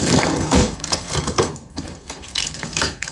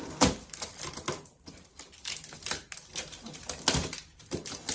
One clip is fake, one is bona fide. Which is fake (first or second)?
first